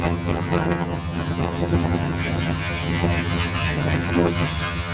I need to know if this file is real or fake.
fake